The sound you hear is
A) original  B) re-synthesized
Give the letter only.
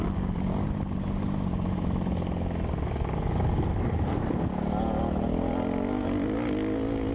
A